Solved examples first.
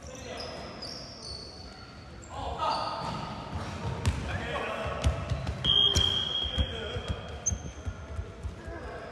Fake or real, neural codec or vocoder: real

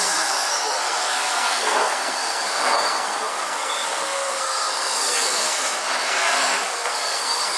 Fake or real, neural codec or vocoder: fake, codec, SNAC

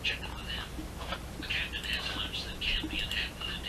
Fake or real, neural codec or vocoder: real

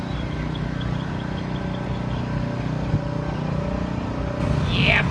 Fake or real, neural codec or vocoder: real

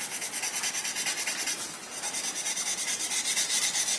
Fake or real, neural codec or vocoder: real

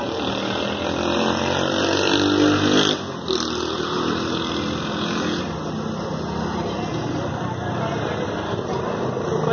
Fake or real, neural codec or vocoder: real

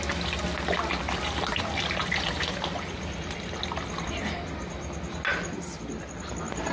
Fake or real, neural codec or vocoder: real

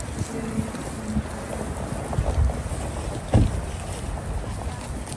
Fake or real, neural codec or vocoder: real